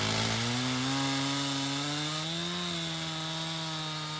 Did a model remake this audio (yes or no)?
no